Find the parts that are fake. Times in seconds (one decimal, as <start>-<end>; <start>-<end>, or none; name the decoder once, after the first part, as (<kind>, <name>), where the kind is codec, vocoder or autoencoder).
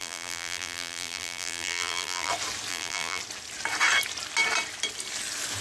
0.0-2.3 (vocoder, BigVGAN v2); 2.7-3.2